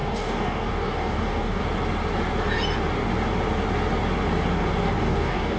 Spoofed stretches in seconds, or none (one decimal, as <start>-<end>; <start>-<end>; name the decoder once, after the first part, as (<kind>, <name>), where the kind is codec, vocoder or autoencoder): 0.0-1.6 (codec, DAC); 4.9-5.6